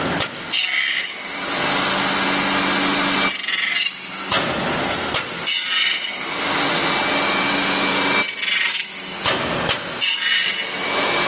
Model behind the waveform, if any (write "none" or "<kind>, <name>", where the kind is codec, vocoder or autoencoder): none